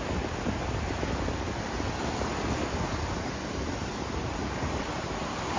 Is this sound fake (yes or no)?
no